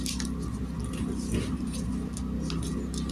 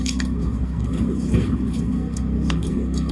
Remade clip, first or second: second